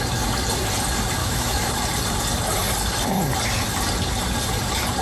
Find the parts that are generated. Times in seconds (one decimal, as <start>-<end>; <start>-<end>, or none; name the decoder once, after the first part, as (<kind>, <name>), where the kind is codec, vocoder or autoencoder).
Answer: 1.2-1.7 (autoencoder, DAC-VAE)